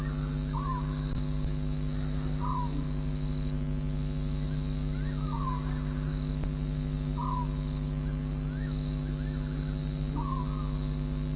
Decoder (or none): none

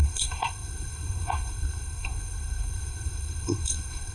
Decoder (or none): codec, SNAC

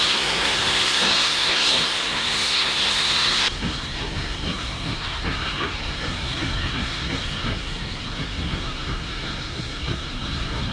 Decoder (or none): codec, SNAC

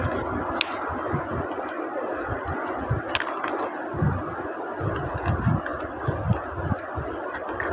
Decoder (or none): none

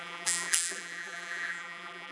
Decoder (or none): vocoder, BigVGAN v2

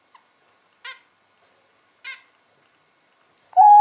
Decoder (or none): none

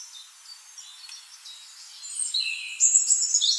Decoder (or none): none